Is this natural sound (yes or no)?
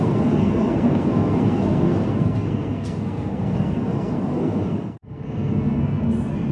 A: no